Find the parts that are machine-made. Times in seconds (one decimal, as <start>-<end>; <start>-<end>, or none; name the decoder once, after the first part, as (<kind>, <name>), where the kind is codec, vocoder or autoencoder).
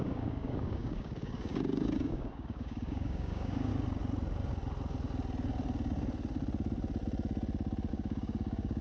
0.0-3.7 (codec, DAC); 7.9-8.8